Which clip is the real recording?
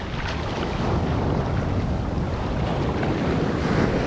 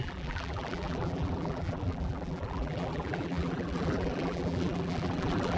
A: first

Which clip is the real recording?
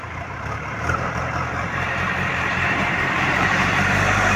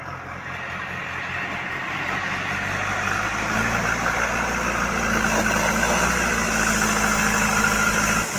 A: second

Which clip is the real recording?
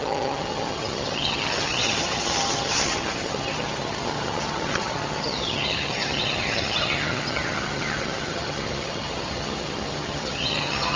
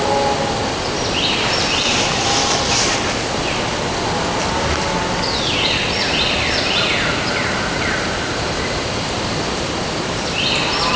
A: second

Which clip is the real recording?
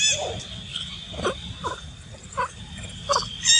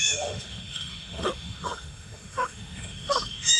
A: first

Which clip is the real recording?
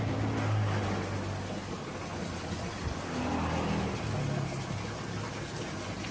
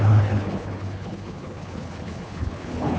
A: first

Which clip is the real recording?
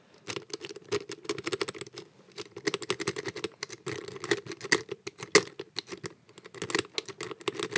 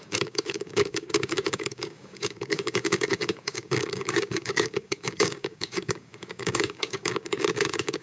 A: first